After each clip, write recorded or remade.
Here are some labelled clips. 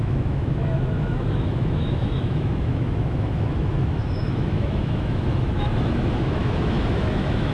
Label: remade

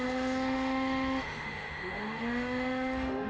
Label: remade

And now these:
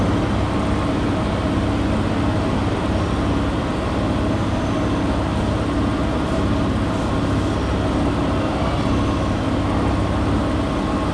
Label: recorded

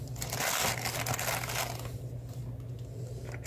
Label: recorded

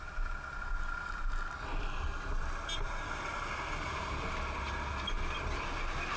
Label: recorded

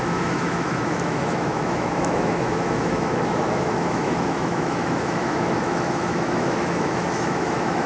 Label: remade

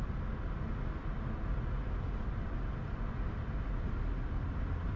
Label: recorded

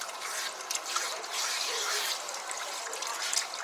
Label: recorded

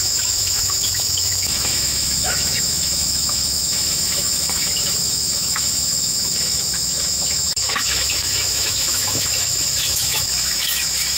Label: remade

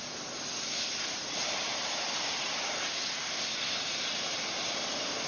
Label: recorded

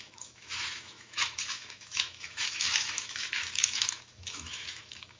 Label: remade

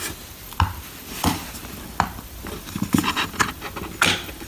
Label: recorded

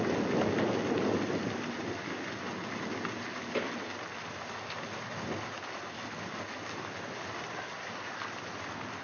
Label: recorded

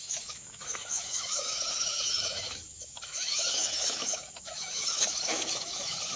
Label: remade